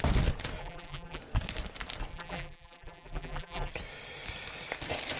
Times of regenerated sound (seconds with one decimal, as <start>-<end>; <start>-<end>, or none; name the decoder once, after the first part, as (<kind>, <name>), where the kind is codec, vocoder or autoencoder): 0.6-1.2 (vocoder, BigVGAN v2); 2.1-3.7